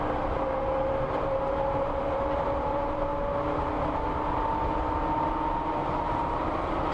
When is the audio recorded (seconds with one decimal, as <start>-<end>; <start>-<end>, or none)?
3.1-5.3